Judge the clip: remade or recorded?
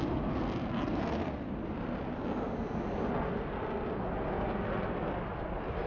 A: recorded